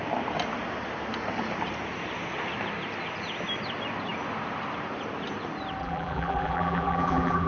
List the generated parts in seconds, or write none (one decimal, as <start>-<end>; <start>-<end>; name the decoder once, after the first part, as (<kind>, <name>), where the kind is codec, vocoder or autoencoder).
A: 5.8-7.5 (vocoder, BigVGAN v2)